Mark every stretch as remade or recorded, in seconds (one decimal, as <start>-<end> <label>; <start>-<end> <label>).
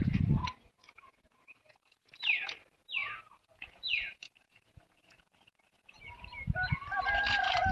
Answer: 0.0-0.4 recorded; 0.4-2.1 remade; 2.1-3.0 recorded; 3.0-6.1 remade; 6.1-7.7 recorded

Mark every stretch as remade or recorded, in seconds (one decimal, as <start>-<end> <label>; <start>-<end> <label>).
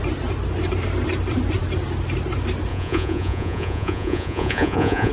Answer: 0.0-2.7 recorded; 2.7-5.1 remade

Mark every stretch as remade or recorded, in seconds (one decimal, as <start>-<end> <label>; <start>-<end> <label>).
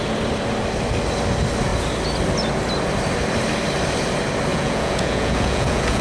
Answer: 0.0-4.5 recorded; 4.5-6.0 remade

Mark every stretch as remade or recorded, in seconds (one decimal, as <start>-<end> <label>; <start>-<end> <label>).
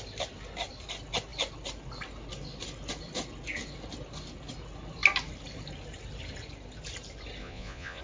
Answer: 0.0-7.4 recorded; 7.4-8.0 remade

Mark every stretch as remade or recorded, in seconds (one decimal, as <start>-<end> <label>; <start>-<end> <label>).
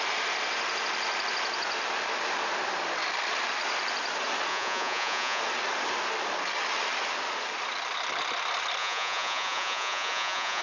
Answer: 0.0-4.5 recorded; 4.5-5.4 remade; 5.4-8.8 recorded; 8.8-10.6 remade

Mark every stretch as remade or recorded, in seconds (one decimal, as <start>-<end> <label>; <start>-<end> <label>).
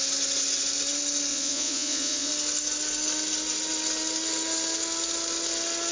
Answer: 0.0-1.3 recorded; 1.3-2.3 remade; 2.3-5.9 recorded